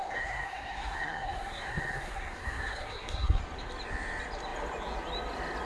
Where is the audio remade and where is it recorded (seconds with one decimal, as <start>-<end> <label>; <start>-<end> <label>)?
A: 0.0-3.4 remade; 3.4-5.7 recorded